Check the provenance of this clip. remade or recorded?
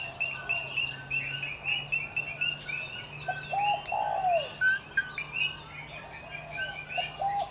recorded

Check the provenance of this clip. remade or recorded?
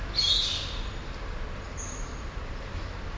recorded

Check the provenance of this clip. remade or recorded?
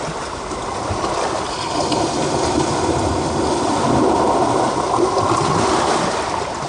recorded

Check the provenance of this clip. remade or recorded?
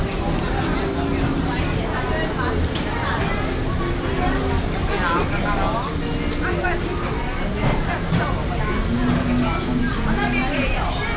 recorded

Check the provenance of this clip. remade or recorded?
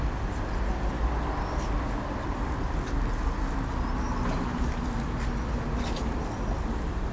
recorded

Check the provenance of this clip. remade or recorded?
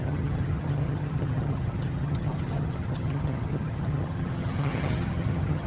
remade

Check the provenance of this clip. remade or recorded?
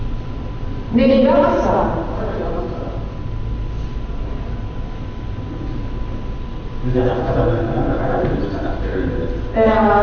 recorded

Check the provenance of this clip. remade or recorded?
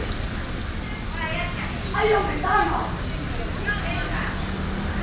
recorded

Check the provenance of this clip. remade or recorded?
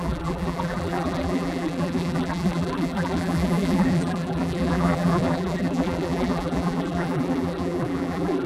remade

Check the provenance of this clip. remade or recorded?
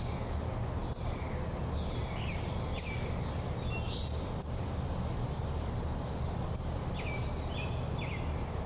recorded